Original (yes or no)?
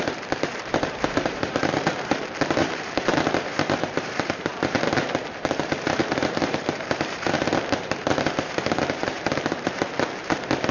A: no